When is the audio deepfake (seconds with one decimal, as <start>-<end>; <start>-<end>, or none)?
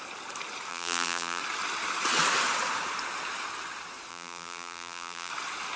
0.7-1.4; 4.1-5.3